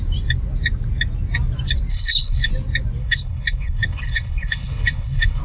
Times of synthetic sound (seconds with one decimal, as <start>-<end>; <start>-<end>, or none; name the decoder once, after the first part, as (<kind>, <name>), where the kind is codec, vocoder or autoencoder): 1.9-2.5 (codec, HILCodec); 3.0-5.4